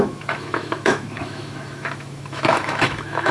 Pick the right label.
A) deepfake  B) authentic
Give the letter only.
A